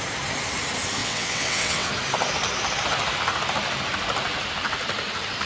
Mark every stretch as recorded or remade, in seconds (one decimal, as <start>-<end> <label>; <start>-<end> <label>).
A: 0.0-1.0 recorded; 1.0-1.9 remade; 1.9-5.5 recorded

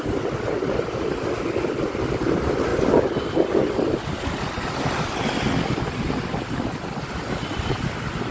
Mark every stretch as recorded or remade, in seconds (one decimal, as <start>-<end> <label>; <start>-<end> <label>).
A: 0.0-8.3 recorded